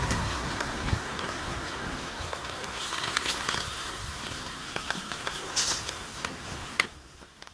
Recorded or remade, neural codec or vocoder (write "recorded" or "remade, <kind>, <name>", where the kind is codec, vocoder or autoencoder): remade, codec, SNAC